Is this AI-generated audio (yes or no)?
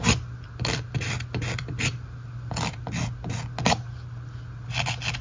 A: no